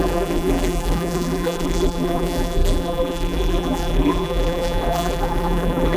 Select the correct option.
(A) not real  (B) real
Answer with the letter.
A